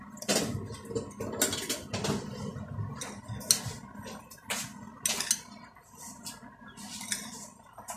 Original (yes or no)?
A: yes